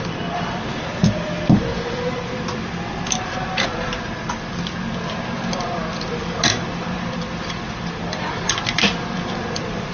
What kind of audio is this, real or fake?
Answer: fake